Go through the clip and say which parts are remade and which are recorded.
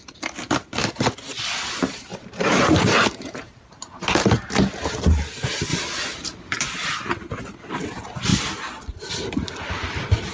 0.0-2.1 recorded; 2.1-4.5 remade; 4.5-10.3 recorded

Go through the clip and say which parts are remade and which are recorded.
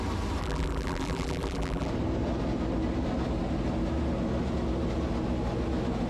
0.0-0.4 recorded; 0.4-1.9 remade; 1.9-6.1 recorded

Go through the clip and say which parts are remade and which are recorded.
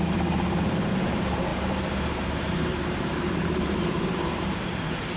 0.0-5.2 remade